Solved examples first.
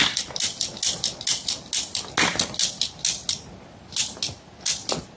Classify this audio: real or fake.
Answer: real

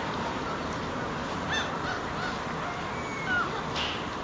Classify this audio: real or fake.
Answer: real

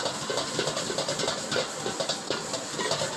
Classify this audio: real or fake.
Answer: real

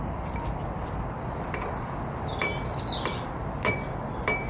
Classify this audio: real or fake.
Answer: fake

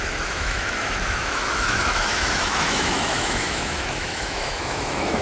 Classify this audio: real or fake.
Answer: fake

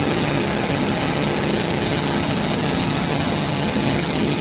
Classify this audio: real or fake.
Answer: fake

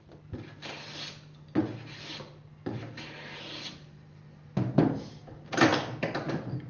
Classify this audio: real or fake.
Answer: real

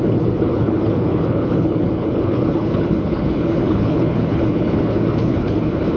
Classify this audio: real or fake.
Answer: fake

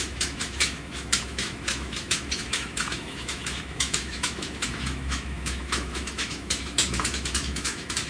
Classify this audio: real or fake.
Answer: fake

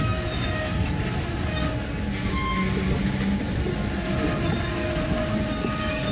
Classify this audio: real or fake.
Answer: real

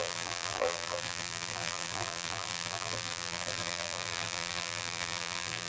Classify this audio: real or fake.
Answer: fake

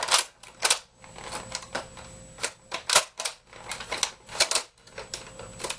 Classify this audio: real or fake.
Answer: real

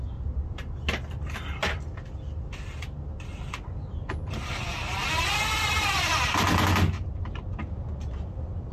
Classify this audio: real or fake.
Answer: real